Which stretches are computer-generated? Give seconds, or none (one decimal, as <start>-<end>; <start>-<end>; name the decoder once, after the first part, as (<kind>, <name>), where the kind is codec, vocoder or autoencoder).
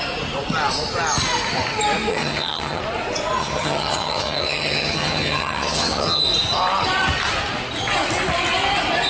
2.1-2.8 (vocoder, HiFi-GAN); 3.4-6.2